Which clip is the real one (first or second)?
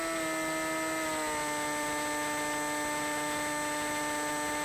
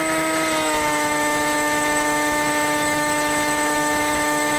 first